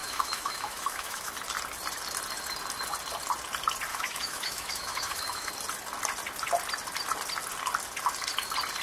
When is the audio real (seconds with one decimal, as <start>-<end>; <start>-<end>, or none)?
1.3-3.9; 5.5-8.8